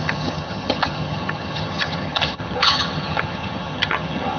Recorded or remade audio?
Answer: remade